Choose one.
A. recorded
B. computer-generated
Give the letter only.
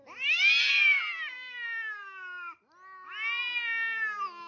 A